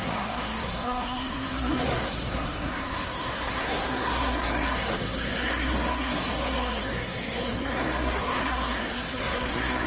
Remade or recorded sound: remade